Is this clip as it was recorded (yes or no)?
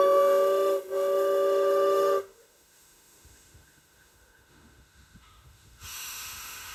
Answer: no